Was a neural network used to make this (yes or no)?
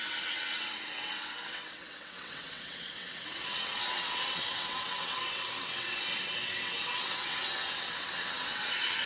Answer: yes